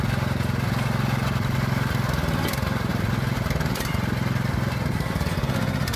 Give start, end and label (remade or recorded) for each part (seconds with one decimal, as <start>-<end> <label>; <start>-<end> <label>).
0.0-2.9 recorded; 2.9-4.5 remade; 4.5-6.0 recorded